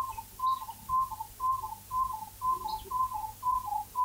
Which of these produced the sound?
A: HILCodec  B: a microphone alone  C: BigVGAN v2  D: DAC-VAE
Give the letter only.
B